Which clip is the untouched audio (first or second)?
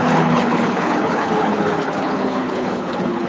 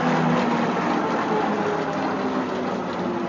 second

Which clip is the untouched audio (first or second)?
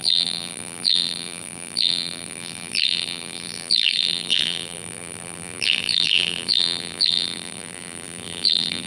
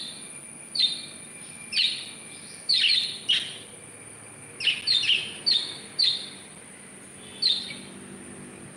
second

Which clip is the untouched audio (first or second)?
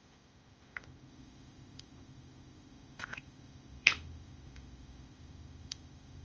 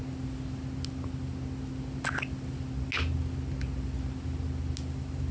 second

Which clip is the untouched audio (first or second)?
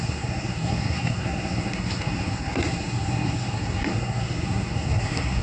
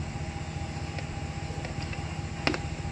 second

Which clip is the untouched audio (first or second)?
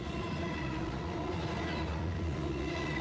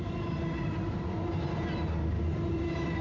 second